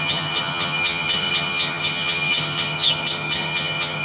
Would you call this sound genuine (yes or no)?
no